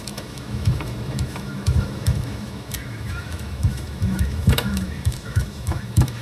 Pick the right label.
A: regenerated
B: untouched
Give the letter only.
A